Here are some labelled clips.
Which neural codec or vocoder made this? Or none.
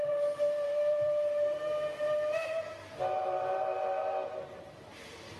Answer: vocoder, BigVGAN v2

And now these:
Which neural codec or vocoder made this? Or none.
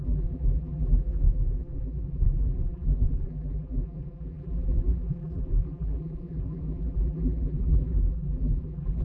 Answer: vocoder, BigVGAN v2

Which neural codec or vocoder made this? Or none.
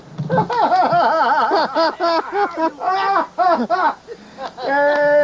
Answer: none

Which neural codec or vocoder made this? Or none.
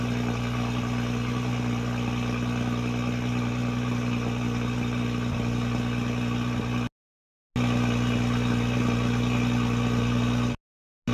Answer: none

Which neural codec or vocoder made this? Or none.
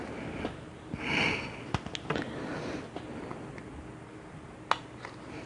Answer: none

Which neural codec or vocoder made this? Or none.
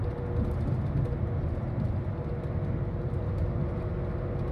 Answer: none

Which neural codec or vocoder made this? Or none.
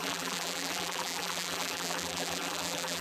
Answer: vocoder, BigVGAN v2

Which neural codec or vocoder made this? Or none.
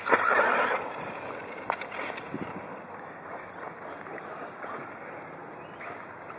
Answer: none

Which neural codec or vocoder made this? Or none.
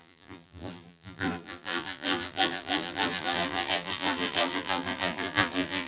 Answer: vocoder, BigVGAN v2